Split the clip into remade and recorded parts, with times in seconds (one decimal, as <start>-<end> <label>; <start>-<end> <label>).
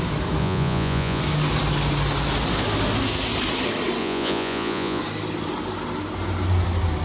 0.0-0.4 recorded; 0.4-1.2 remade; 1.2-4.0 recorded; 4.0-5.0 remade; 5.0-7.0 recorded